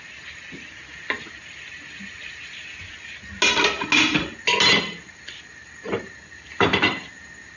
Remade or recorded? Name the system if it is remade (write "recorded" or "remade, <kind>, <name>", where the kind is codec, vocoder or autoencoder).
recorded